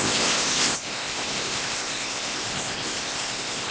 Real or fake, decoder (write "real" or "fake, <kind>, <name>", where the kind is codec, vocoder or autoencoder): fake, codec, ZipCodec